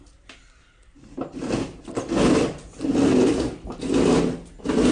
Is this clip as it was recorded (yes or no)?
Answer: yes